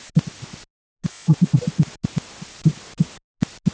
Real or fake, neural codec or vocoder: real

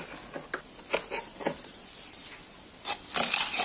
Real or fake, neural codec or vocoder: real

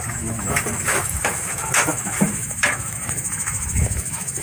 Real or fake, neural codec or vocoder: fake, autoencoder, DAC-VAE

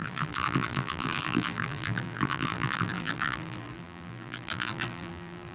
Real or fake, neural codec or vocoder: fake, vocoder, BigVGAN v2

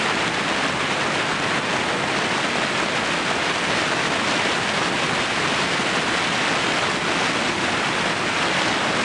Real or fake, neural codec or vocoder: real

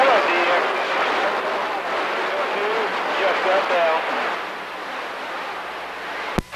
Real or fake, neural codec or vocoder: real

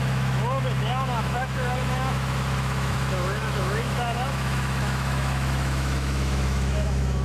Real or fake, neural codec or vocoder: fake, autoencoder, DAC-VAE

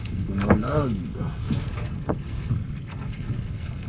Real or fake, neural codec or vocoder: fake, codec, SNAC